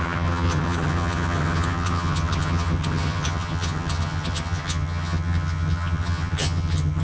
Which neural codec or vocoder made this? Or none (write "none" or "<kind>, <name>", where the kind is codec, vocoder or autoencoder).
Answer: vocoder, HiFi-GAN